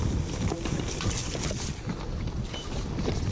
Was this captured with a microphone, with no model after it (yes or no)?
yes